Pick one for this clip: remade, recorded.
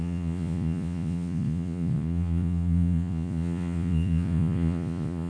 remade